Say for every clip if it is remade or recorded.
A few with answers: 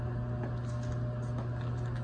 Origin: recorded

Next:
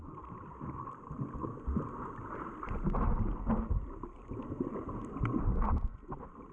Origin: recorded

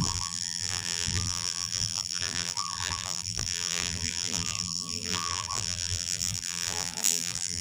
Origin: remade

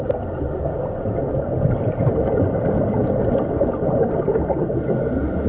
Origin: recorded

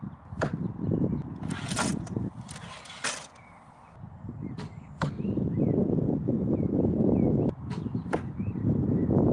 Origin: recorded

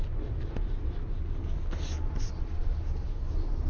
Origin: recorded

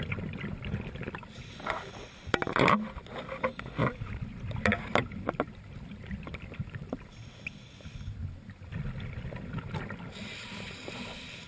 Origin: recorded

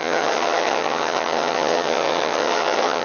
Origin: remade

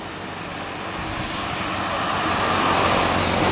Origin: recorded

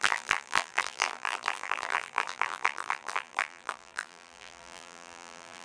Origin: remade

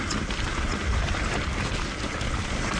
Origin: recorded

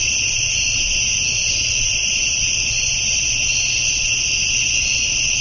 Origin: recorded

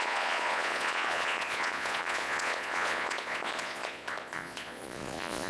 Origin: remade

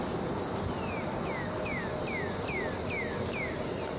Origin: recorded